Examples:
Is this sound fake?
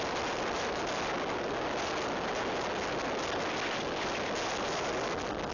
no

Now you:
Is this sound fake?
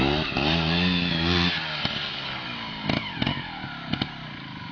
no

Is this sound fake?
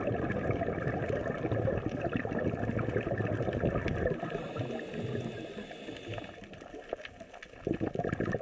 no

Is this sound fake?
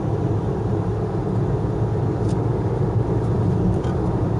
yes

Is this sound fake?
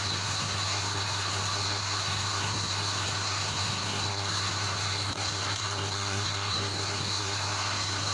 yes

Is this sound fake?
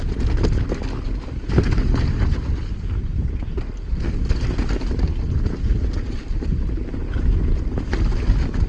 no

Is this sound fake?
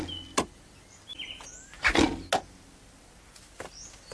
no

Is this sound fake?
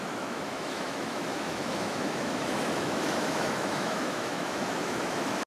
yes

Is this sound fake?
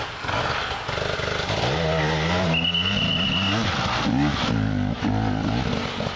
no